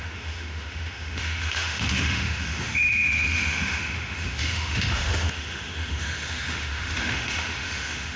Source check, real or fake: fake